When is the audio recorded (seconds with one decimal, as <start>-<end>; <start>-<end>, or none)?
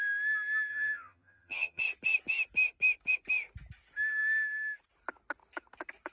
0.0-0.7; 1.8-6.1